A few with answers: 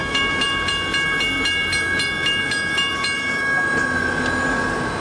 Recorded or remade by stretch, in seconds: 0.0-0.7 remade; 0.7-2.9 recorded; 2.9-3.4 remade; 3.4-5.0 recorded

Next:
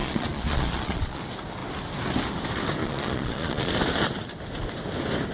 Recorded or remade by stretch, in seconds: 0.0-1.2 remade; 1.2-2.8 recorded; 2.8-3.7 remade; 3.7-5.3 recorded